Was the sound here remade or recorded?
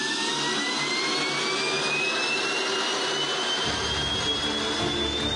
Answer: recorded